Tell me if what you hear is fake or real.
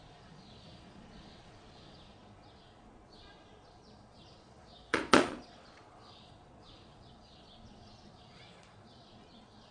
fake